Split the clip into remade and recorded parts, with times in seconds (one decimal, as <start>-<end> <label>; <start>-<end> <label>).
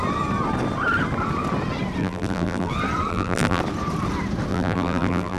0.0-2.0 recorded; 2.0-2.7 remade; 2.7-3.1 recorded; 3.1-3.6 remade; 3.6-4.5 recorded; 4.5-5.4 remade